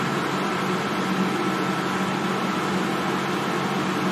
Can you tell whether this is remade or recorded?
recorded